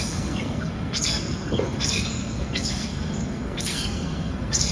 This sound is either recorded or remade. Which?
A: remade